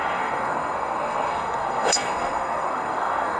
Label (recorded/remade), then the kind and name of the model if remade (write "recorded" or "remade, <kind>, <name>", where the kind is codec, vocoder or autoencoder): remade, codec, SNAC